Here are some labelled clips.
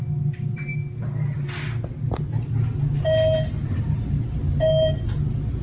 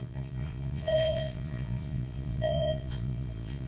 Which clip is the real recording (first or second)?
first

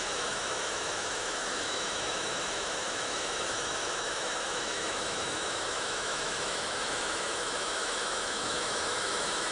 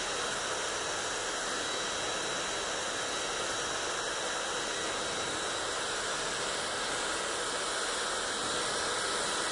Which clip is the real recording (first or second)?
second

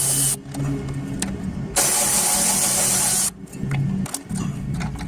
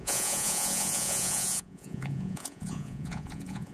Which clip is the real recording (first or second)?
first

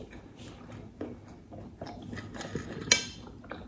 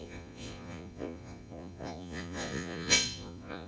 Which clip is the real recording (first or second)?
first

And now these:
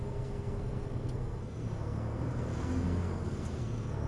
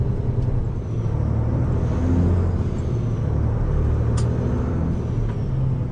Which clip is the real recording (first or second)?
second